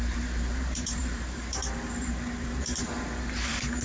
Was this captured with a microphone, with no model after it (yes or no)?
no